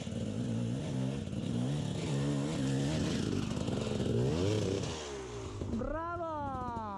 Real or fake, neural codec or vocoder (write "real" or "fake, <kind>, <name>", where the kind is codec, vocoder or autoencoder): real